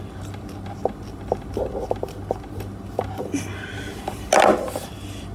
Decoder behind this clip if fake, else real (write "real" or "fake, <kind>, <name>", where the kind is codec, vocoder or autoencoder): real